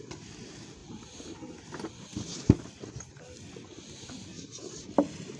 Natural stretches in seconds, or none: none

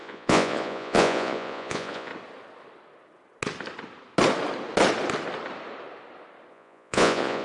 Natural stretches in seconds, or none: 2.1-6.5

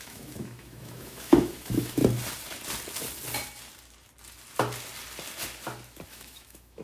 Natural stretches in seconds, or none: 2.0-6.1